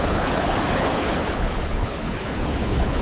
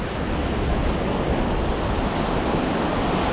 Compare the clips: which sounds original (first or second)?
second